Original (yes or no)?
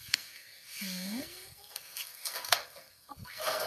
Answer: no